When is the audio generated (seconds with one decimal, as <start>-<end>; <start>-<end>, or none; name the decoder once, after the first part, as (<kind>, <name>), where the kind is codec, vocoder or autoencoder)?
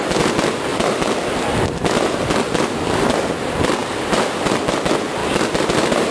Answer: none